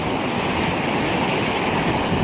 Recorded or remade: recorded